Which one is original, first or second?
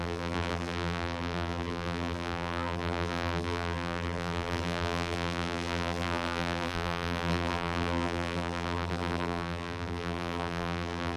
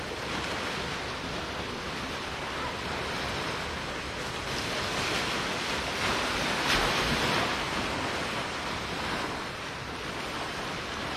second